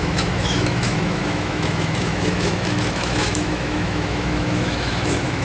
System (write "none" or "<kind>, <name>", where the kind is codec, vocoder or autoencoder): autoencoder, DAC-VAE